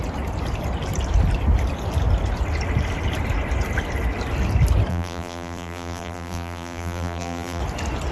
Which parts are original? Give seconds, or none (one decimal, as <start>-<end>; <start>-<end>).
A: 0.0-4.9; 7.6-8.1